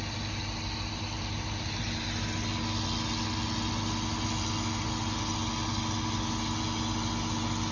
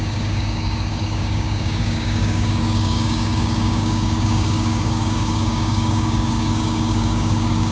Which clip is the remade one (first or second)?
second